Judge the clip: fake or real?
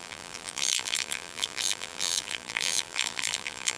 fake